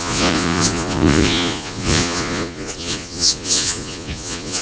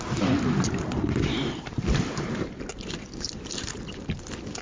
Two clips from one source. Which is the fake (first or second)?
first